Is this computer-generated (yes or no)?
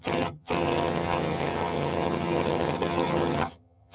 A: yes